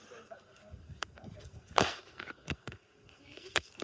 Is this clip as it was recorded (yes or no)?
no